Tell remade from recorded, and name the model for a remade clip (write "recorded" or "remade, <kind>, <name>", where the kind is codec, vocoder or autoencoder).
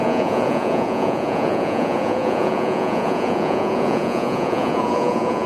remade, vocoder, Vocos